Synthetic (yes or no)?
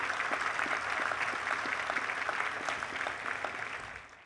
no